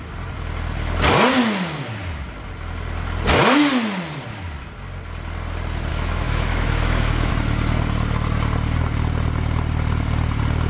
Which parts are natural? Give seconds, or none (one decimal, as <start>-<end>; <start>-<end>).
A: 0.0-5.9; 7.3-10.7